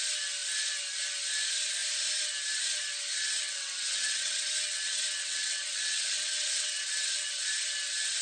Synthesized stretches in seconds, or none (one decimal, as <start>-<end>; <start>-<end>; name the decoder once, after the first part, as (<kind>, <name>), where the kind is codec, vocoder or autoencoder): 3.1-7.5 (vocoder, WaveNeXt)